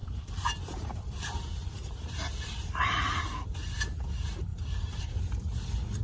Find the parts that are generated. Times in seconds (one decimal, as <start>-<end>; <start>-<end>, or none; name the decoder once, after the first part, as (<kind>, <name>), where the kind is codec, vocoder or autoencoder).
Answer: 0.0-3.5 (vocoder, BigVGAN v2); 4.5-5.2